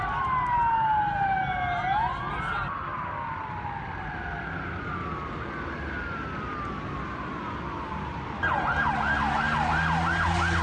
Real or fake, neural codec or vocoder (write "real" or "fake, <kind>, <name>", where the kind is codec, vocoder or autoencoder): real